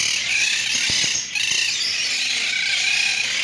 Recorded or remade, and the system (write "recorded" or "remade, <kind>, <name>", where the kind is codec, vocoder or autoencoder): recorded